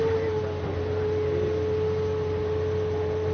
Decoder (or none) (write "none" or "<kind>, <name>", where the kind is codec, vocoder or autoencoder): none